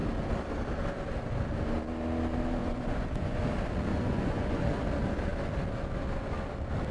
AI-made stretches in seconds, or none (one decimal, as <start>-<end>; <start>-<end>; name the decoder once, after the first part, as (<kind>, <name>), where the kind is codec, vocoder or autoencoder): 2.6-3.4 (vocoder, Vocos); 3.9-4.6